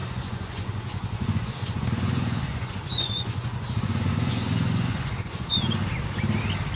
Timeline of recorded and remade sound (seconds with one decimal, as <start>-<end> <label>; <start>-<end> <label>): 0.0-5.8 remade; 5.8-6.8 recorded